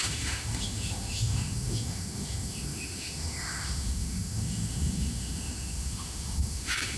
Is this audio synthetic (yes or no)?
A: yes